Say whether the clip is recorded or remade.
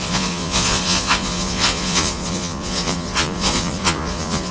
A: remade